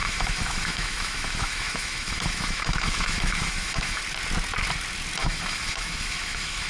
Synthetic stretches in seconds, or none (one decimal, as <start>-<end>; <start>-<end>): 0.0-4.0; 5.2-6.7